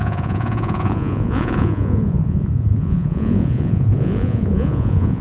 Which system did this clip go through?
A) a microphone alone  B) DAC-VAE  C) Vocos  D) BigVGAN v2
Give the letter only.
C